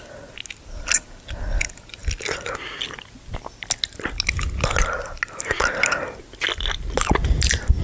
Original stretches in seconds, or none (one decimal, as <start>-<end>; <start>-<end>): 0.0-7.8